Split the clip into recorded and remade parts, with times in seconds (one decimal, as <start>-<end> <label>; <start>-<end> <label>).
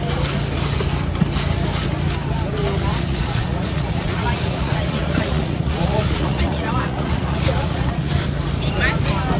0.0-2.9 recorded; 2.9-8.1 remade; 8.1-9.4 recorded